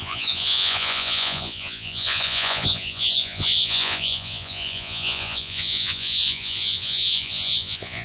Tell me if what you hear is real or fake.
fake